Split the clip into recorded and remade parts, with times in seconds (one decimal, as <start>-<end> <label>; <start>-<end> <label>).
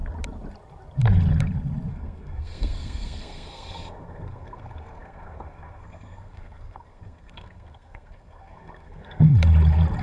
0.0-1.9 recorded; 1.9-9.3 remade; 9.3-10.0 recorded